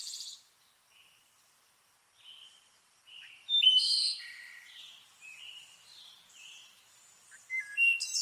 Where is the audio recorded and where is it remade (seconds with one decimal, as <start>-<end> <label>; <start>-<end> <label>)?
0.0-0.5 remade; 0.5-2.4 recorded; 2.4-6.9 remade; 6.9-8.2 recorded